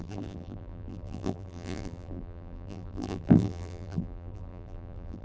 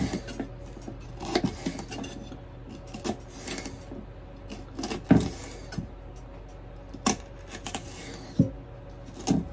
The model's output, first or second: first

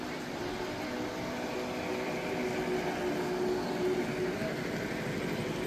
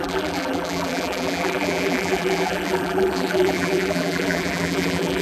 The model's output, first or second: second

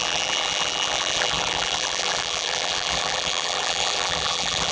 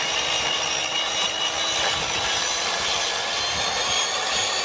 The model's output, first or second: first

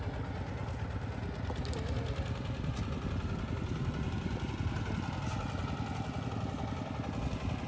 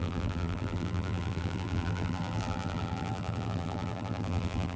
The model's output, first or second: second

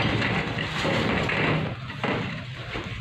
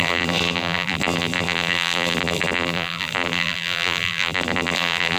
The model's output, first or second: second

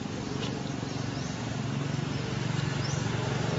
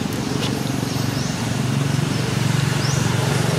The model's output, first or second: second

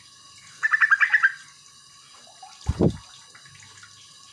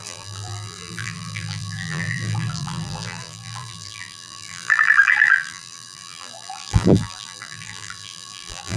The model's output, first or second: second